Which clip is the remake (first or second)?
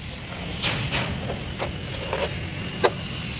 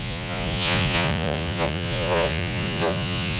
second